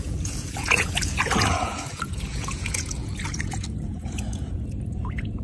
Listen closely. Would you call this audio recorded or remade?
remade